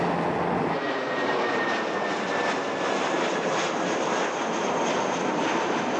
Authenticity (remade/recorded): recorded